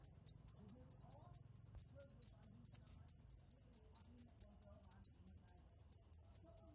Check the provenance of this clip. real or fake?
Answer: real